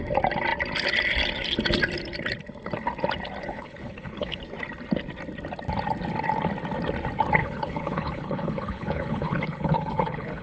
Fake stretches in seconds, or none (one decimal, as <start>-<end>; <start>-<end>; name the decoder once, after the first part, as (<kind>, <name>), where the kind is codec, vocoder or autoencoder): 3.4-4.4 (codec, HILCodec); 7.4-10.4